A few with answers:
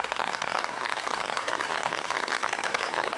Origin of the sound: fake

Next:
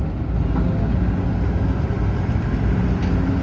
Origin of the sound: real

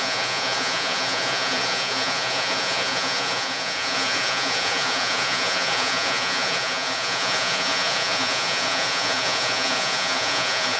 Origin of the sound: fake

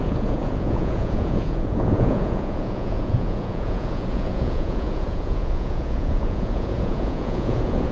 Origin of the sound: fake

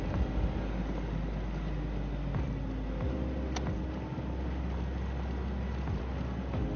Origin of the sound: real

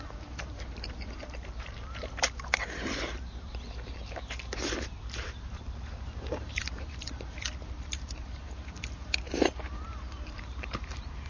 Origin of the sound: fake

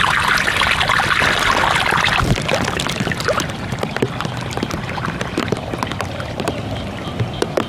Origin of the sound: real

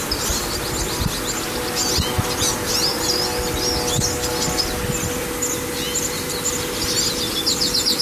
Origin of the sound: real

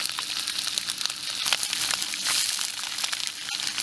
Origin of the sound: real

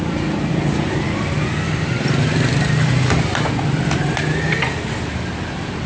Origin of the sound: real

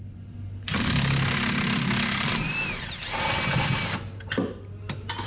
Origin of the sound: real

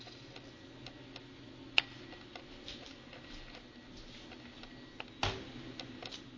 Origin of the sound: real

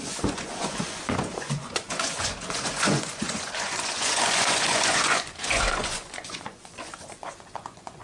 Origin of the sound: fake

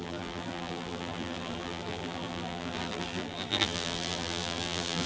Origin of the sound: fake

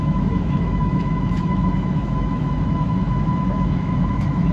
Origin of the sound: fake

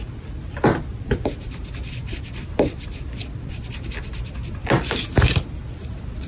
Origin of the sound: fake